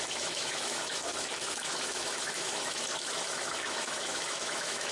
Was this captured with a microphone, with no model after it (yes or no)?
no